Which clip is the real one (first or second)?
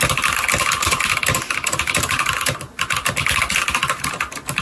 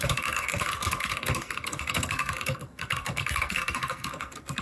first